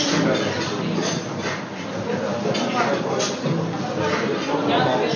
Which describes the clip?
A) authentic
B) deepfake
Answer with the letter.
A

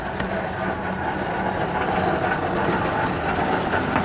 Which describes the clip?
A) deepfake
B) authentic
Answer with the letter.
B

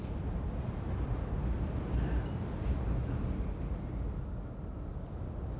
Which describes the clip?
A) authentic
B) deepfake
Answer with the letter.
A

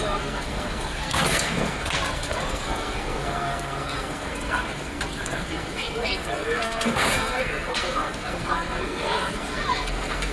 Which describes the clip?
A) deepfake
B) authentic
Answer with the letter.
A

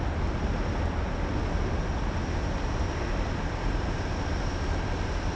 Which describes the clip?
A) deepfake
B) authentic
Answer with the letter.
B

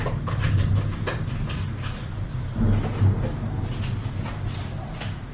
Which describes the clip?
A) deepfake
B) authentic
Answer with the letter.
B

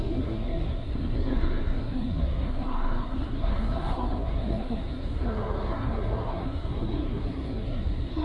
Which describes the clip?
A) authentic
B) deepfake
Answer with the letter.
B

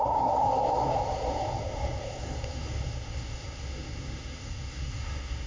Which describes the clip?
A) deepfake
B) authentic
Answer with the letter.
A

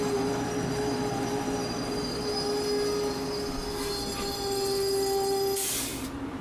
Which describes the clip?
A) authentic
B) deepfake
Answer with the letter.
A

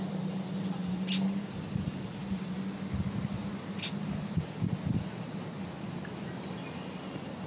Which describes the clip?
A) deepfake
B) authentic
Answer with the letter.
B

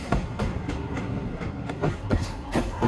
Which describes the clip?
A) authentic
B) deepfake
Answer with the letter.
B